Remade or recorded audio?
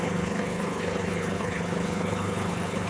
remade